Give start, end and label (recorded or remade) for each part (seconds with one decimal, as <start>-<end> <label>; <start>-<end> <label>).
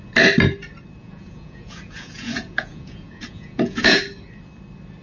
0.0-1.0 recorded; 1.0-4.0 remade; 4.0-5.0 recorded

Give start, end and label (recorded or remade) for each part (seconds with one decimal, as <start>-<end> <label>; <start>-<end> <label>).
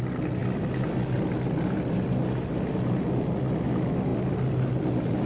0.0-5.3 recorded